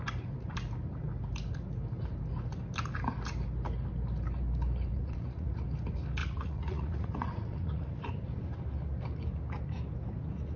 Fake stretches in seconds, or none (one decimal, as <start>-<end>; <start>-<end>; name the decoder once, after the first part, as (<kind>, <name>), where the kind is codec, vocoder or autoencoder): 4.9-5.6 (vocoder, Vocos); 6.2-8.0